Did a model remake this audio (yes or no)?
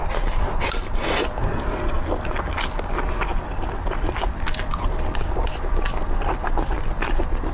no